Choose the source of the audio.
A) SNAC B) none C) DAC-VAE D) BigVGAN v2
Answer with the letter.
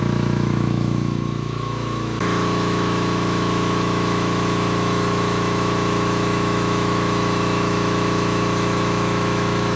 C